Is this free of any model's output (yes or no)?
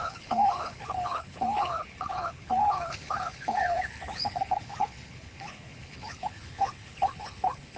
no